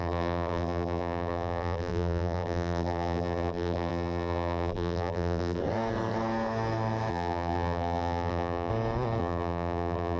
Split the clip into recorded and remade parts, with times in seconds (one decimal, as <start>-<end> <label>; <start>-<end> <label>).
0.0-5.6 remade; 5.6-7.1 recorded; 7.1-8.7 remade; 8.7-9.2 recorded; 9.2-10.2 remade